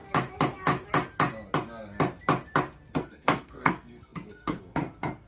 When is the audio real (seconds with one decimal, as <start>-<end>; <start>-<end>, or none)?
0.0-2.9